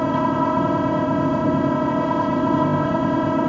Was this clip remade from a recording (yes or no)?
yes